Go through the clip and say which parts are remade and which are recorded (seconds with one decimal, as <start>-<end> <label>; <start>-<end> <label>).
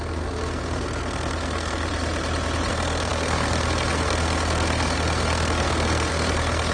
0.0-1.9 remade; 1.9-2.7 recorded; 2.7-6.7 remade